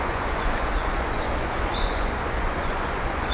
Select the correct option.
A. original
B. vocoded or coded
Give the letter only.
B